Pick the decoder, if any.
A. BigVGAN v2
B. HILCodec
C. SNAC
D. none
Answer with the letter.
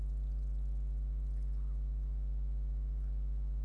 D